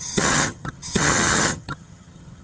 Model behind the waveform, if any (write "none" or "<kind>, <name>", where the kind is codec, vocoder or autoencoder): vocoder, HiFi-GAN